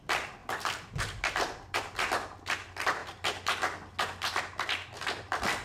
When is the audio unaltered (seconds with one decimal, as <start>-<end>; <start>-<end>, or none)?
0.0-5.6